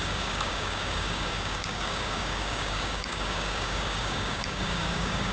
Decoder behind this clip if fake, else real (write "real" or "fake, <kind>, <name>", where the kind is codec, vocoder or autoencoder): fake, codec, DAC